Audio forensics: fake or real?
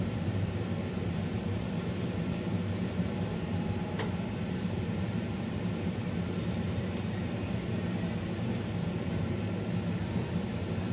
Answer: fake